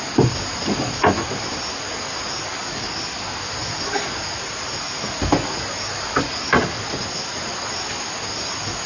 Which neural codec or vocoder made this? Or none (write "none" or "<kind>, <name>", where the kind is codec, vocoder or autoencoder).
none